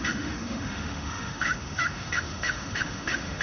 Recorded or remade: remade